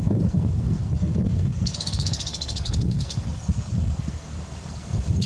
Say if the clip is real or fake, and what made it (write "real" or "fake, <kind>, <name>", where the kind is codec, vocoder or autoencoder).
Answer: fake, codec, SNAC